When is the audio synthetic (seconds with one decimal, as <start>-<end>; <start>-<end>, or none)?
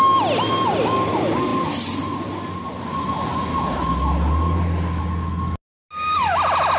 none